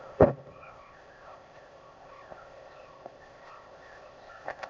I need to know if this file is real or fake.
fake